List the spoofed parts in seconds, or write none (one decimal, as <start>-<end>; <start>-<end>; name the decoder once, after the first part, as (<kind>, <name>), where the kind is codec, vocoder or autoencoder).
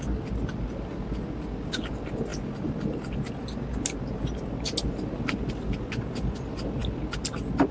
none